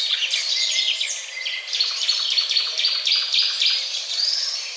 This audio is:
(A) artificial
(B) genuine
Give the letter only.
B